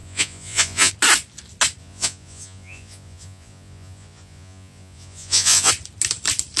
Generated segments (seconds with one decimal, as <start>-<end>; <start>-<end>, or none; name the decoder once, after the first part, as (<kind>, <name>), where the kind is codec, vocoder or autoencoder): 0.0-0.9 (vocoder, Vocos); 1.8-5.7